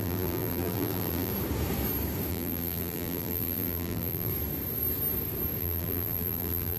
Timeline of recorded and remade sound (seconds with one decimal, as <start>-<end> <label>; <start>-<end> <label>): 0.0-1.3 remade; 1.3-2.3 recorded; 2.3-4.3 remade; 4.3-5.6 recorded; 5.6-6.8 remade